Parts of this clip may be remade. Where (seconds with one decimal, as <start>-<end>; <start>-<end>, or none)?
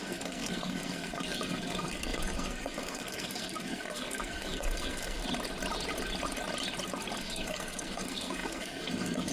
0.0-5.2; 7.2-9.3